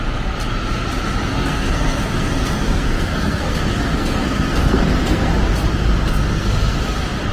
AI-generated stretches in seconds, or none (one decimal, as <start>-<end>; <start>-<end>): 1.3-5.3; 6.1-6.8